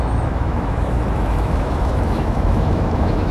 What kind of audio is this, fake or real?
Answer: fake